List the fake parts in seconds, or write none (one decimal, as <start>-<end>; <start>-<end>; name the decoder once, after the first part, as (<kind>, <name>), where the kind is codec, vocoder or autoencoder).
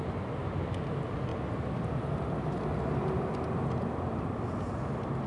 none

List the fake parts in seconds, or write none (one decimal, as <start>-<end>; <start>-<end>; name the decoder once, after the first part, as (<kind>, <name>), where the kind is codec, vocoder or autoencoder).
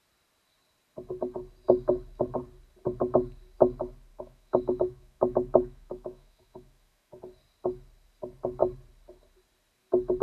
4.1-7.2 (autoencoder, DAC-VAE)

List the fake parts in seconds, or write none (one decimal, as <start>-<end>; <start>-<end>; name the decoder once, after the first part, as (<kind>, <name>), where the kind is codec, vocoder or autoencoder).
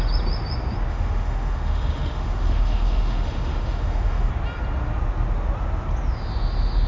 0.9-4.3 (autoencoder, DAC-VAE)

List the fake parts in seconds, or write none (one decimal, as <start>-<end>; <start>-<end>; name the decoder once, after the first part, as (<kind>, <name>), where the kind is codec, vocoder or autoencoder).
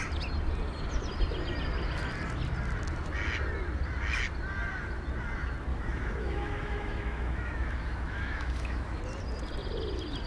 5.7-9.0 (autoencoder, DAC-VAE)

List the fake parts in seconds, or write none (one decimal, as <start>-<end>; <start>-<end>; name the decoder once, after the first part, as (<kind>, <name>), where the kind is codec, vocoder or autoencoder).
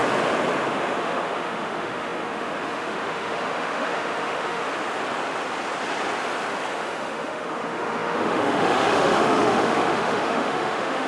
0.7-4.6 (autoencoder, DAC-VAE); 6.7-11.1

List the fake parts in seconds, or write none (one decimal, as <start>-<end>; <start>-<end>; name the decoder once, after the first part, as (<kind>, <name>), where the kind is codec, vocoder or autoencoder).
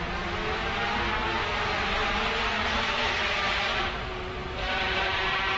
none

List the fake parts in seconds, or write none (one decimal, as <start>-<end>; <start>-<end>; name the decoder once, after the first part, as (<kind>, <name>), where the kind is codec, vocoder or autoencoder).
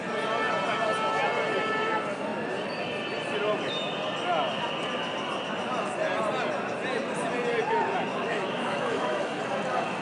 8.1-9.4 (autoencoder, DAC-VAE)